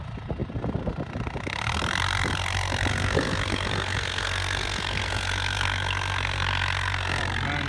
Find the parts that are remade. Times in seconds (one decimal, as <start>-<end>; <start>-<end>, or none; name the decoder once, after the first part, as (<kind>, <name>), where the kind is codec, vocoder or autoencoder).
2.9-7.2 (codec, SNAC)